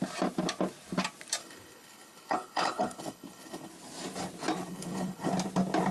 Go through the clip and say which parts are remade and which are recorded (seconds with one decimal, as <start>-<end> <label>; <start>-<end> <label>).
0.0-1.4 recorded; 1.4-3.7 remade; 3.7-4.7 recorded; 4.7-5.3 remade; 5.3-5.9 recorded